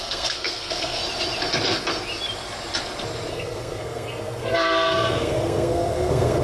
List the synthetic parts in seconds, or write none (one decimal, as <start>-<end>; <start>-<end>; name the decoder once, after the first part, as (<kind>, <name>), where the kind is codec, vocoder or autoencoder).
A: 0.0-1.0 (codec, SNAC); 3.3-6.4